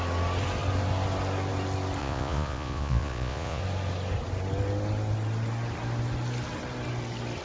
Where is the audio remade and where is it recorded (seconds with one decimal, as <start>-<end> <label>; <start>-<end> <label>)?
0.0-2.0 recorded; 2.0-3.6 remade; 3.6-7.4 recorded